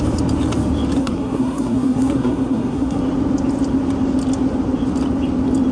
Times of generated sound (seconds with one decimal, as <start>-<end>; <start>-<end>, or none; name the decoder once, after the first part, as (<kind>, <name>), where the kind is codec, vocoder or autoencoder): 1.0-3.0 (codec, SNAC)